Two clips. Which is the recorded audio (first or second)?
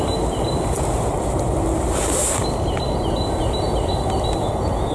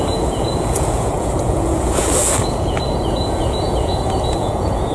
first